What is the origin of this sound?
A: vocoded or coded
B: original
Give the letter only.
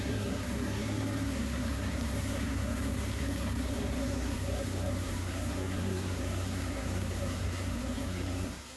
A